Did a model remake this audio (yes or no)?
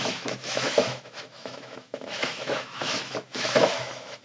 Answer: yes